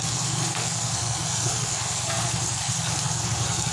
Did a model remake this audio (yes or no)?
yes